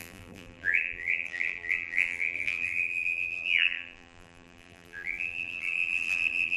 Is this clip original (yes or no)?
no